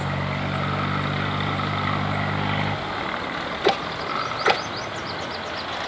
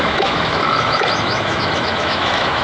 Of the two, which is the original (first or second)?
first